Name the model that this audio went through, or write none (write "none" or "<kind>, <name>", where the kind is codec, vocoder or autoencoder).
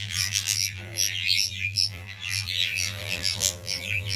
vocoder, BigVGAN v2